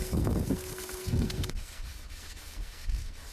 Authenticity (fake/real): fake